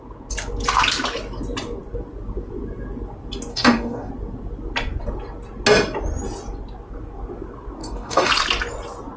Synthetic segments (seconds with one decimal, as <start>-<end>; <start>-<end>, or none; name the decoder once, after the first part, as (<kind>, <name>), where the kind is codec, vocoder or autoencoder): 3.5-4.1 (codec, DAC); 7.8-8.3